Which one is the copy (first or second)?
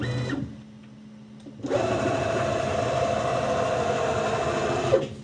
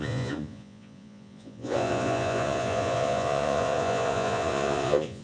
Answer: second